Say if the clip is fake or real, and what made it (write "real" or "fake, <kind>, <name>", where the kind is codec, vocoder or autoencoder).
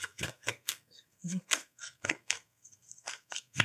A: fake, codec, SNAC